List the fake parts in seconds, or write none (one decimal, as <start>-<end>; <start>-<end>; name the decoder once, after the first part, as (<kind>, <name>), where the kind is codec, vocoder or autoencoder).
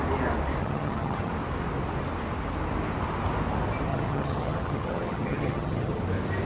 0.6-1.3 (vocoder, HiFi-GAN); 3.9-6.0